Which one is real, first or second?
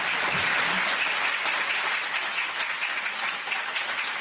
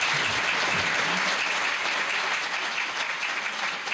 second